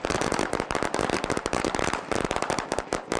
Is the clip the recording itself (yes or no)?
no